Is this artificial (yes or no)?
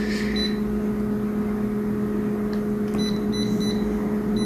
no